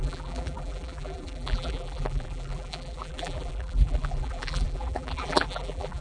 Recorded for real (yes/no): no